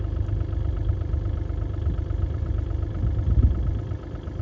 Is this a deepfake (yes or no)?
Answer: no